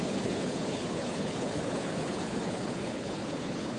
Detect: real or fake fake